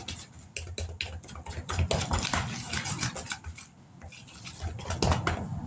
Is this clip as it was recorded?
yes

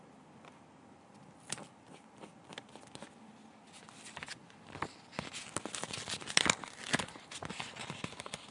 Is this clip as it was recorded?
yes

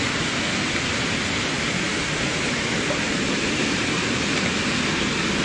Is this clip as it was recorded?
yes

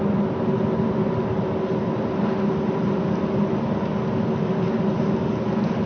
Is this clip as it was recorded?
yes